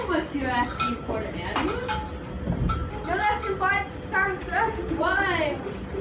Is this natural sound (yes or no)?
yes